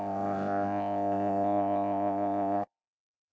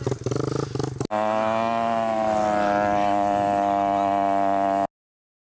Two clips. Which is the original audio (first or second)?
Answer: second